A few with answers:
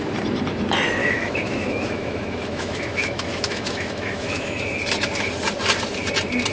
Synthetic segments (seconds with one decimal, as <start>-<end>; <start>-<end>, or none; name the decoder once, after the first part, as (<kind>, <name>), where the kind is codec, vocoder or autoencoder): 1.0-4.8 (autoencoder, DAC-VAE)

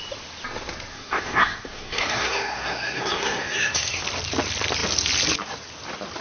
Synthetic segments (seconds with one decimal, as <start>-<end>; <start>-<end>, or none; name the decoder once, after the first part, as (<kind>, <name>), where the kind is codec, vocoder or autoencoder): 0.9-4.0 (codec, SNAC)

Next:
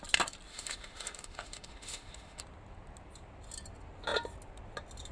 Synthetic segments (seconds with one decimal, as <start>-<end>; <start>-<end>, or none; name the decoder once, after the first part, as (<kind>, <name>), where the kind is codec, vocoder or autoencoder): 0.5-2.4 (autoencoder, DAC-VAE)